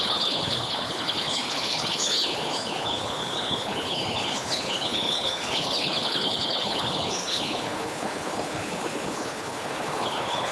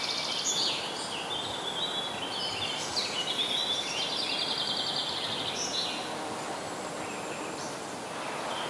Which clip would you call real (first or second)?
second